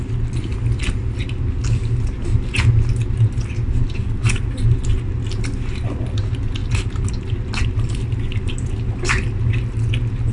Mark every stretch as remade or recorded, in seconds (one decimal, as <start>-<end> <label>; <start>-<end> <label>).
0.0-10.3 recorded